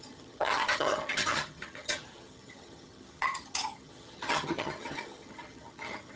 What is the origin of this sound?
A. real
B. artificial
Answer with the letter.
B